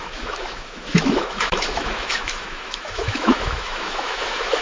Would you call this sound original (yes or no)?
no